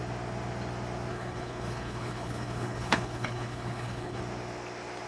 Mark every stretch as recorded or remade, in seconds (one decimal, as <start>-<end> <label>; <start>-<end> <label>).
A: 0.0-1.1 recorded; 1.1-4.2 remade; 4.2-5.1 recorded